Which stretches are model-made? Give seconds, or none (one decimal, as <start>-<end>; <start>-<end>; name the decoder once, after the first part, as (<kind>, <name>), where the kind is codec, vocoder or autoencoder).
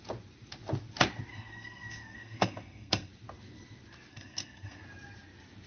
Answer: 1.3-3.1 (codec, SNAC); 4.1-4.8